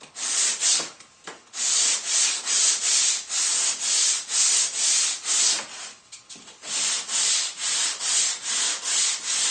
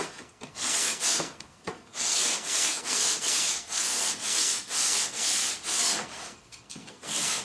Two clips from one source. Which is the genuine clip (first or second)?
first